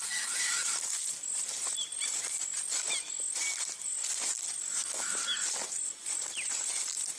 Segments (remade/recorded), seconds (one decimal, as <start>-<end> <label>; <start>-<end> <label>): 0.0-7.2 recorded